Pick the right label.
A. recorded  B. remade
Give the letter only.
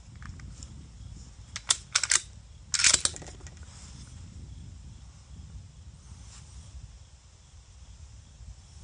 A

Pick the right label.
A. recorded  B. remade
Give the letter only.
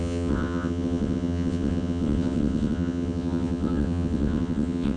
B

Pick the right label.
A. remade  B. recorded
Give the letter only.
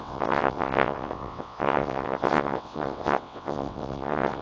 A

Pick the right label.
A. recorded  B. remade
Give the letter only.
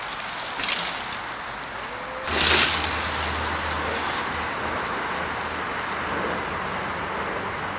A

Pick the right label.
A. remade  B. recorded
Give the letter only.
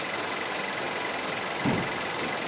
B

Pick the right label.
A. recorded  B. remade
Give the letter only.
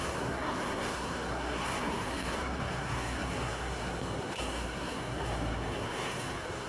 B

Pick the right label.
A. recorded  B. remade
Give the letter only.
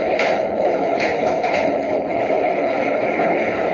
B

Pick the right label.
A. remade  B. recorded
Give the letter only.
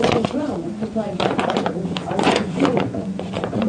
A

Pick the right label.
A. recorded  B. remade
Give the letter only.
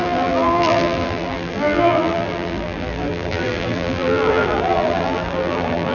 B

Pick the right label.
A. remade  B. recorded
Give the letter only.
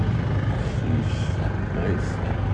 B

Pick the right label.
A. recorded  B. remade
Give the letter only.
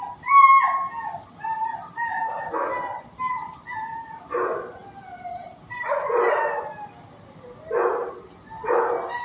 A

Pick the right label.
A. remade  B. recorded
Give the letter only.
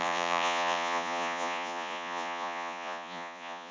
A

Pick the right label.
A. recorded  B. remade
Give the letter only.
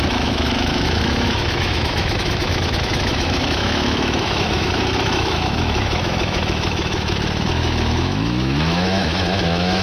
B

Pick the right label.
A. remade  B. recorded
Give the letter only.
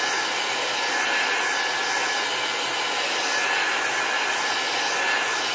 B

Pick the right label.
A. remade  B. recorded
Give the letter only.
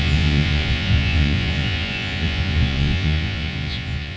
A